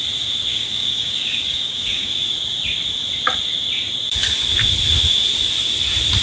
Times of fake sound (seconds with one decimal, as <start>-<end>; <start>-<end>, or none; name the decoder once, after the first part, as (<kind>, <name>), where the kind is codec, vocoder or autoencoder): 0.5-2.1 (codec, DAC)